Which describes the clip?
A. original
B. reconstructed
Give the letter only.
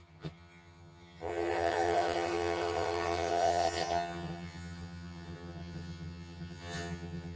B